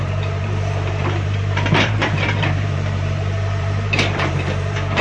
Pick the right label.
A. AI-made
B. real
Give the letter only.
A